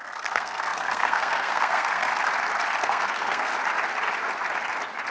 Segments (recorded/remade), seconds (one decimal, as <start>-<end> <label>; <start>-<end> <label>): 0.0-2.1 remade; 2.1-2.8 recorded; 2.8-3.5 remade; 3.5-5.1 recorded

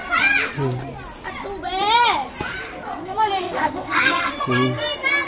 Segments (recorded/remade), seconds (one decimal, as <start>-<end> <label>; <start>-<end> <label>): 0.0-3.0 recorded; 3.0-4.3 remade; 4.3-5.3 recorded

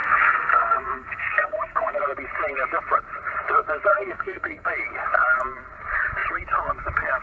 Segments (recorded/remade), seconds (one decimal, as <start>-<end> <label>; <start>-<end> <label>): 0.0-2.0 remade; 2.0-3.9 recorded; 3.9-4.7 remade; 4.7-7.2 recorded

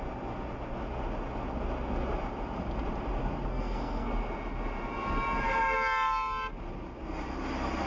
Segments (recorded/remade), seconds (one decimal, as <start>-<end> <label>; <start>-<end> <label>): 0.0-3.5 recorded; 3.5-4.1 remade; 4.1-7.9 recorded